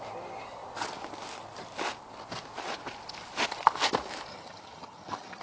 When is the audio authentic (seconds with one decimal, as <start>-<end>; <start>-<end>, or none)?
0.0-4.3